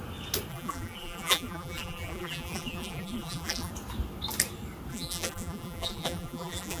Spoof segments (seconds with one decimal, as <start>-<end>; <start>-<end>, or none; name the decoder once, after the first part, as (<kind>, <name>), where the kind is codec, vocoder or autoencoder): 0.5-3.7 (vocoder, BigVGAN v2); 4.9-6.8